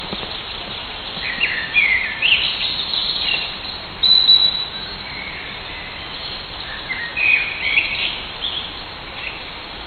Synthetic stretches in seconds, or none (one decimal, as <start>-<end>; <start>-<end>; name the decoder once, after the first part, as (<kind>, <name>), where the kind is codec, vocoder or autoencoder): 0.0-3.0 (vocoder, BigVGAN v2); 5.0-9.9